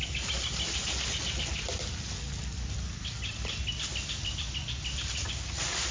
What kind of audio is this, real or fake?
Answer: real